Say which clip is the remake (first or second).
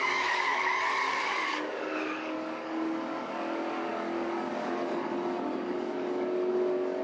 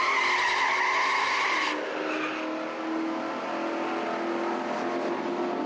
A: first